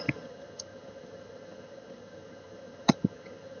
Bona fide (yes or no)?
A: no